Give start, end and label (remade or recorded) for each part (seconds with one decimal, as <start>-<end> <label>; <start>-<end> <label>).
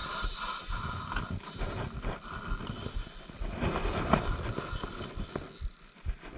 0.0-6.4 recorded